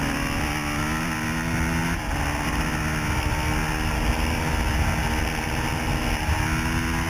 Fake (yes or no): no